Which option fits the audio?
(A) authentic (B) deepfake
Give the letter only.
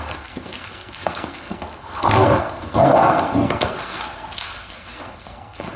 B